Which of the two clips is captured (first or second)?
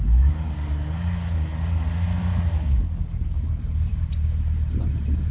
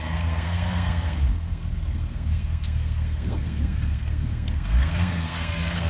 first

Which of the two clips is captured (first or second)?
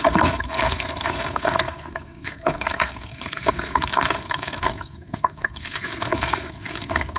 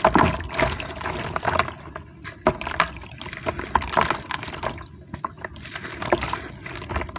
second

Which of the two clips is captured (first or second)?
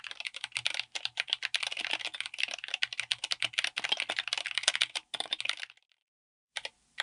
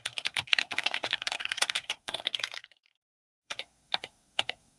first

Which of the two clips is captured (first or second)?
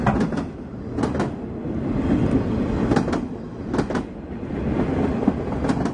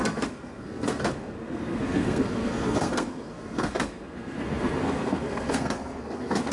first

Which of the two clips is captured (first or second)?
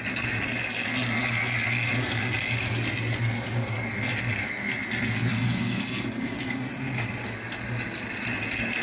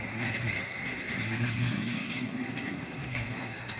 first